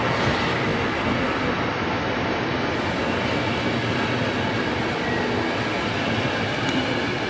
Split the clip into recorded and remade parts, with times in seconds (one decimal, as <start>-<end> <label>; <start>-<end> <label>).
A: 0.0-7.3 recorded